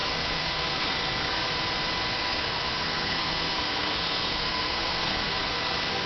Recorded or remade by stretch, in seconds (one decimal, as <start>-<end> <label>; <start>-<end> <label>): 0.0-1.5 remade; 1.5-2.1 recorded; 2.1-6.1 remade